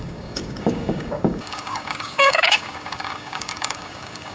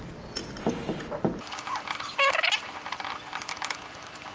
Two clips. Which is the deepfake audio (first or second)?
first